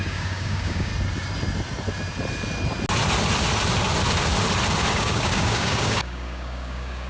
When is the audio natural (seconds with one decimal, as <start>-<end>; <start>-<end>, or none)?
0.9-4.9